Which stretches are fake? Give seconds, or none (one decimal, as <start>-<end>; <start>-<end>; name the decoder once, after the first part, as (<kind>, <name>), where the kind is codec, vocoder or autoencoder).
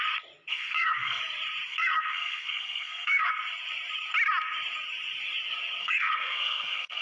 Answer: 0.5-1.2 (codec, SNAC); 1.7-3.3; 5.8-7.0